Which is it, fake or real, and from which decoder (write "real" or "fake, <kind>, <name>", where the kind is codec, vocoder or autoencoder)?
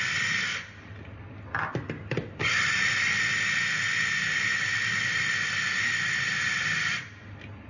real